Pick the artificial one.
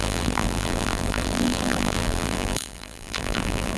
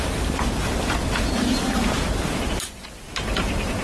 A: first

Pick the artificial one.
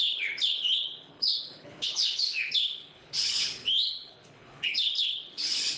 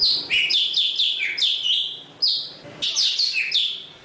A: first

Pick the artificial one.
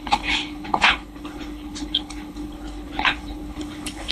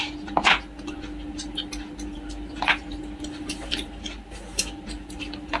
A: first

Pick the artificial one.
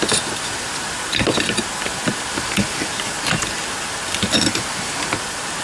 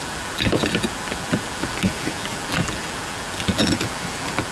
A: second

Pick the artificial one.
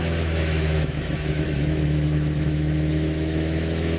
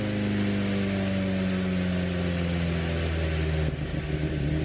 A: first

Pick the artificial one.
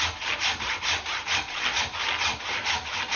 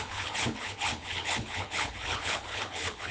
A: second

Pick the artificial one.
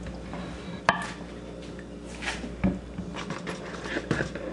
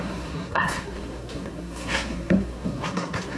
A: second